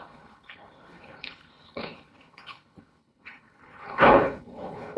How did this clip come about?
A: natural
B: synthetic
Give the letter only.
B